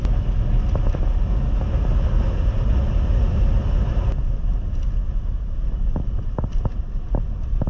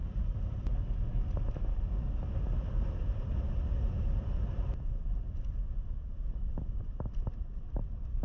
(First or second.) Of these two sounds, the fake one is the second